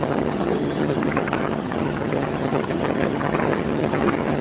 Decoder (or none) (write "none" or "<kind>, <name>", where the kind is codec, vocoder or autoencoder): vocoder, HiFi-GAN